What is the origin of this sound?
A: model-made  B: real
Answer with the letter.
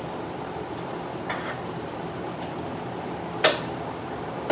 B